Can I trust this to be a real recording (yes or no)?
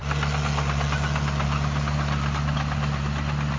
yes